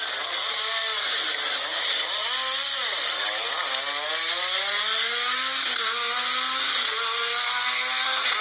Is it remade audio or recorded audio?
recorded